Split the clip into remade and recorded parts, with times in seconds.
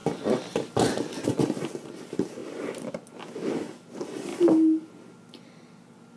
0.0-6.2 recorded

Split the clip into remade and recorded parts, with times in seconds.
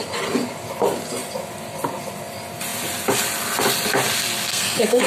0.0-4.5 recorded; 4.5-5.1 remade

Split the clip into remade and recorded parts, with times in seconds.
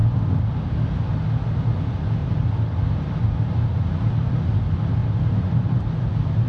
0.0-2.2 recorded; 2.2-3.1 remade; 3.1-5.0 recorded; 5.0-6.0 remade; 6.0-6.5 recorded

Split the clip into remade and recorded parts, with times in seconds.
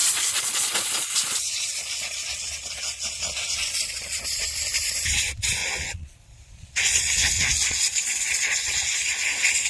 0.0-4.2 remade; 4.2-5.6 recorded; 5.6-9.7 remade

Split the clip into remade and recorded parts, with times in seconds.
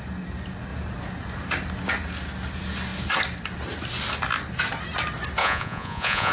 0.0-5.4 recorded; 5.4-6.3 remade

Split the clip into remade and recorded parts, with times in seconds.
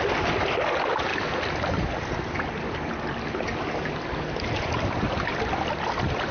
0.0-6.3 recorded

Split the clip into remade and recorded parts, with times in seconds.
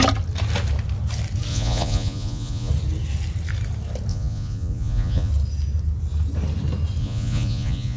0.0-1.5 recorded; 1.5-2.7 remade; 2.7-4.1 recorded; 4.1-5.3 remade; 5.3-7.0 recorded; 7.0-8.0 remade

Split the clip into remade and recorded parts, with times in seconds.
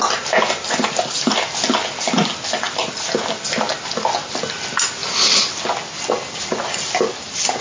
0.0-7.6 recorded